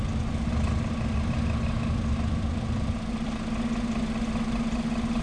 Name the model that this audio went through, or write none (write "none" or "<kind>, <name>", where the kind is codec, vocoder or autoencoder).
none